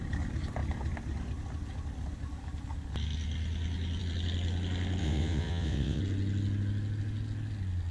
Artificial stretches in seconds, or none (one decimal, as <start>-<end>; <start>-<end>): 5.0-6.0